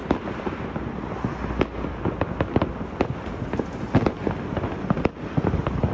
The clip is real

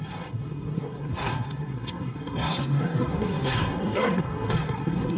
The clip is fake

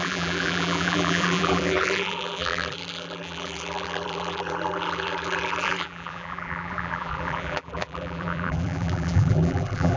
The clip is fake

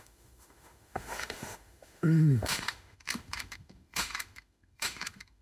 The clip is fake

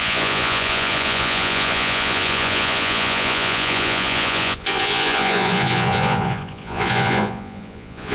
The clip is fake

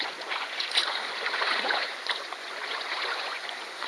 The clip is fake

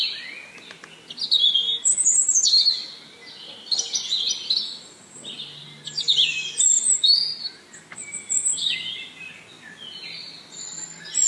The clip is real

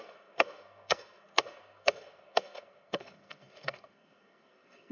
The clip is fake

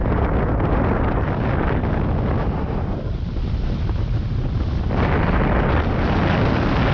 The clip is real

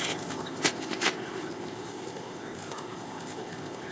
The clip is fake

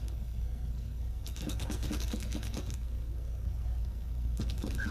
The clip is fake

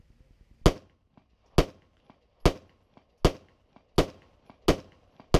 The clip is real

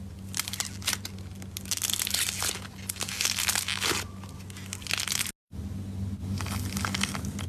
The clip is real